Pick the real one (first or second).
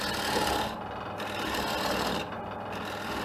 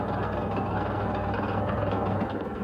first